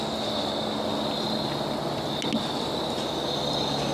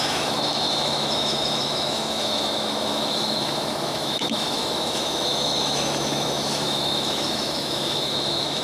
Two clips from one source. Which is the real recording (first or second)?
first